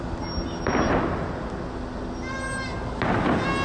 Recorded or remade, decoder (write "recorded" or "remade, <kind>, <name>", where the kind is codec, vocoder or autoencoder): recorded